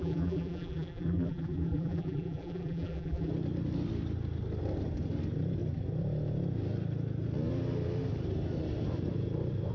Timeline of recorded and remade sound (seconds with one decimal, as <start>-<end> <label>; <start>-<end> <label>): 0.0-3.3 remade; 3.3-9.7 recorded